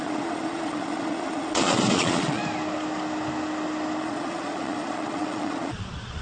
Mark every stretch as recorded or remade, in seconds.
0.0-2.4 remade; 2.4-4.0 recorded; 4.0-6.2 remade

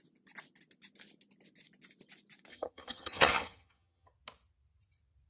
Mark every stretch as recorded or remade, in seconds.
0.0-2.5 recorded; 2.5-4.1 remade; 4.1-5.3 recorded

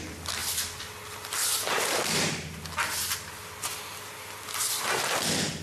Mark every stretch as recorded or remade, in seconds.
0.0-5.6 recorded